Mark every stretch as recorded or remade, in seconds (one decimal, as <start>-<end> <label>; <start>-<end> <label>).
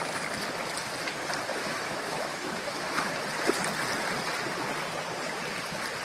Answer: 0.0-1.5 recorded; 1.5-3.1 remade; 3.1-6.0 recorded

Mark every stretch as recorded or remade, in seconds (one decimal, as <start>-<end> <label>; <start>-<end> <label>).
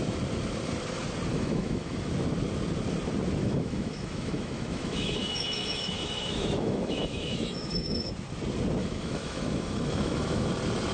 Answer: 0.0-1.3 recorded; 1.3-2.0 remade; 2.0-3.4 recorded; 3.4-8.1 remade; 8.1-8.8 recorded; 8.8-10.5 remade; 10.5-10.9 recorded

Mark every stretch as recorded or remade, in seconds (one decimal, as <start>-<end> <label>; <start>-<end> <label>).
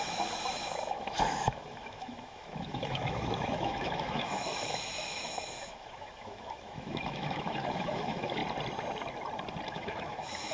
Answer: 0.0-8.4 remade; 8.4-9.7 recorded; 9.7-10.5 remade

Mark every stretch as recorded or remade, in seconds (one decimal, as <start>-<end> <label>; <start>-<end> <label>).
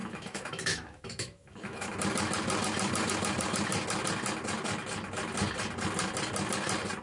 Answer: 0.0-1.9 remade; 1.9-7.0 recorded